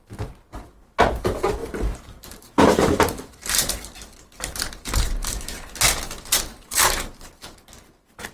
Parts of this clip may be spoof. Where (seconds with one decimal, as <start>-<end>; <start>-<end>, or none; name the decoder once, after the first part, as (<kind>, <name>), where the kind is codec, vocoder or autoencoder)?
1.6-3.7 (vocoder, BigVGAN v2); 6.5-7.3